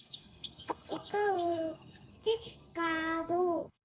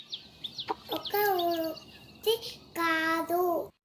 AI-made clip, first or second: first